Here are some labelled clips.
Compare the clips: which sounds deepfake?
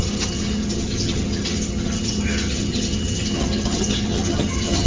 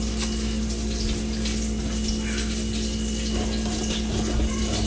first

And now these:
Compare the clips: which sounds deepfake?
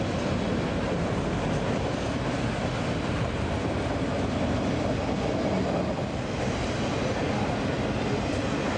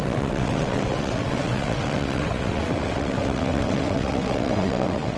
second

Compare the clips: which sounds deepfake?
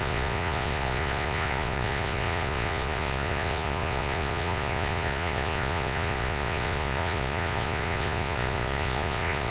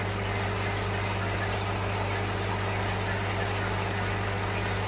first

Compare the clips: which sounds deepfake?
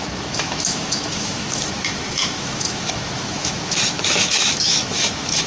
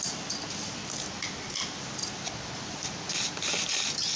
first